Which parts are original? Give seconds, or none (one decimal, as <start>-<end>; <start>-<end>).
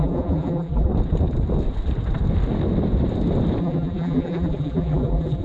0.9-3.6